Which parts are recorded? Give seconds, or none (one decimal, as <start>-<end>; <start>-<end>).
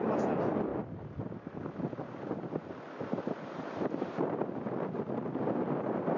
0.0-6.2